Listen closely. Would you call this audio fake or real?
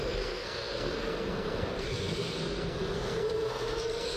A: fake